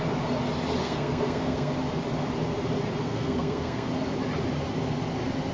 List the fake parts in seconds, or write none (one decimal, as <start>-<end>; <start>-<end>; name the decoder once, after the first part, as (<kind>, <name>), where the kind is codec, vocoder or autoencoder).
0.8-1.7 (codec, SNAC); 3.0-3.9